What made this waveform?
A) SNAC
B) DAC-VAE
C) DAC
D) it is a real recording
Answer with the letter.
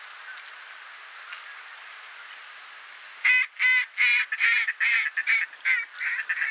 D